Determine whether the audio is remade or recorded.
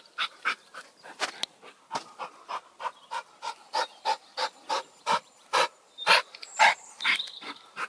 recorded